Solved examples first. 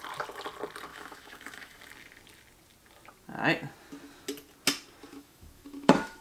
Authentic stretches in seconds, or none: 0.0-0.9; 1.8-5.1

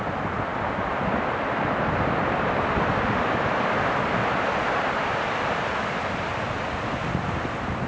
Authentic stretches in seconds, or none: 0.0-7.9

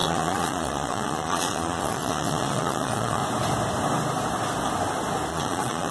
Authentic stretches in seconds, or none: 3.2-5.3

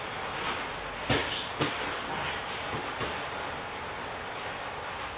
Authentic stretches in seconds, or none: 0.0-5.2

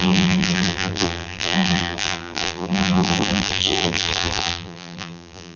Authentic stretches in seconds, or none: none

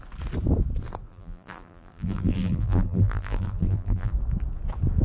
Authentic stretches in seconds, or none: 0.0-1.1; 4.1-5.0

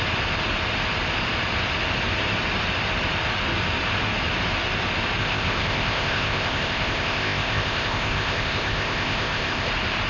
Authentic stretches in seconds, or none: 0.0-5.2; 9.7-10.1